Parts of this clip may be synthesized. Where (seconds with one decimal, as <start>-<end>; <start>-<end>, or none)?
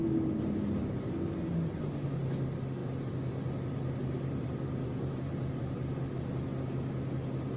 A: 2.8-6.1